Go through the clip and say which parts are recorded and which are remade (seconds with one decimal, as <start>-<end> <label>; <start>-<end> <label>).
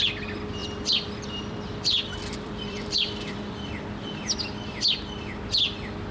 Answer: 0.0-0.6 recorded; 0.6-3.7 remade; 3.7-6.1 recorded